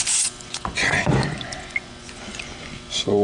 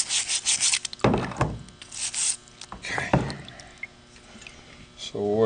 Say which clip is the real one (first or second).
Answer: second